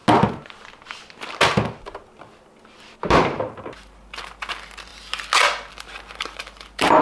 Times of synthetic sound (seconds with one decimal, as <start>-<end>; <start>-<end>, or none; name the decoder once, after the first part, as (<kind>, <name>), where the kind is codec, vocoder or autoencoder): 3.6-4.9 (vocoder, BigVGAN v2); 5.7-7.0